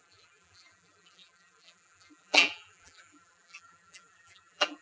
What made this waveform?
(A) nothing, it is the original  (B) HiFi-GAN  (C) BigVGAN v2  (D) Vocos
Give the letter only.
C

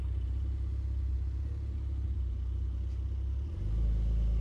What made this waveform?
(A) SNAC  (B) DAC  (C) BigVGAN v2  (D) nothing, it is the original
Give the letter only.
D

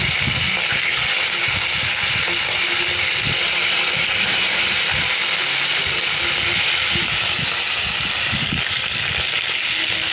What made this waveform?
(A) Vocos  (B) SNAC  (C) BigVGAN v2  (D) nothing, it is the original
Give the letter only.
D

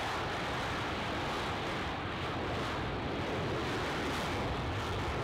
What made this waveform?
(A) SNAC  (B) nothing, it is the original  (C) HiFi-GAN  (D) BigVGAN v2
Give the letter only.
B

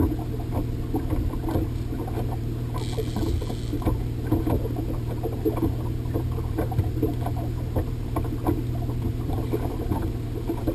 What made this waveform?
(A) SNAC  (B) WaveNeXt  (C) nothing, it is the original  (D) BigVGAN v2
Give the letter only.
C